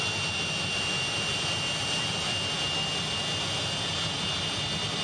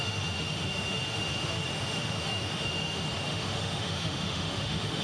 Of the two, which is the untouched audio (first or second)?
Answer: first